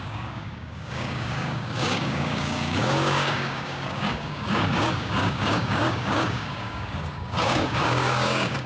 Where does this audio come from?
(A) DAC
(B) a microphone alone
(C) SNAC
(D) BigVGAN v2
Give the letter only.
A